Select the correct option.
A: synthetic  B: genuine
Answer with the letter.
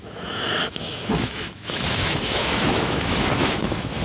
A